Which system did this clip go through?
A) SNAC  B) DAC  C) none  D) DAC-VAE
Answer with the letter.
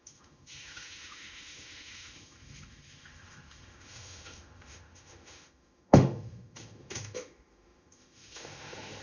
D